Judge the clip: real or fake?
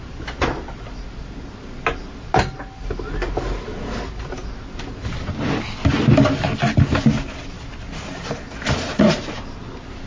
real